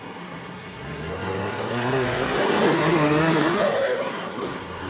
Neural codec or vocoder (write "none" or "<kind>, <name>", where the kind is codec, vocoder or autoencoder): codec, SNAC